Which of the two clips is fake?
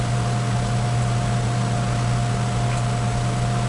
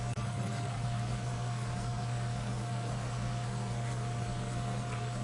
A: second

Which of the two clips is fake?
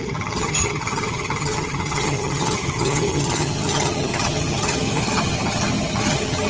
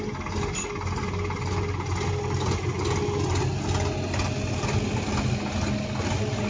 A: first